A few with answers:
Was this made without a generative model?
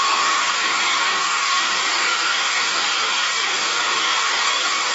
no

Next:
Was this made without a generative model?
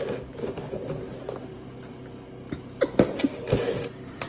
yes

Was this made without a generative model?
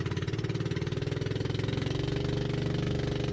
yes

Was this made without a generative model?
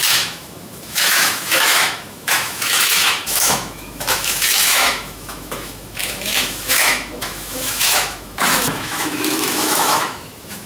no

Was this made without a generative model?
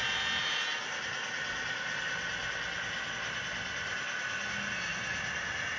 yes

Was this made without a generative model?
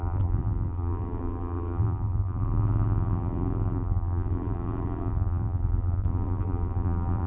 no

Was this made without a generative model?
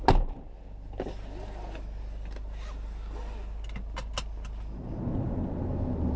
yes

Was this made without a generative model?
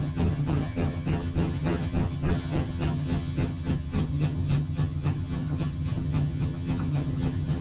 no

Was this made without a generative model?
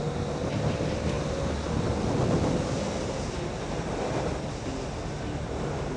yes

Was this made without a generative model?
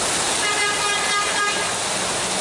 yes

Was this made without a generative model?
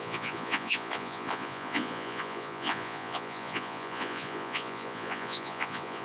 no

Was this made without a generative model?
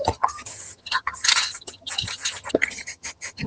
no